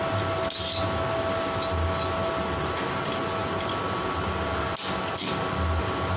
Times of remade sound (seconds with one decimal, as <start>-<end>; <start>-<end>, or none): none